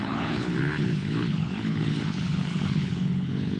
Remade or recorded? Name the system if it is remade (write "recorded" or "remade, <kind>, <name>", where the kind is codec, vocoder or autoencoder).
remade, codec, HILCodec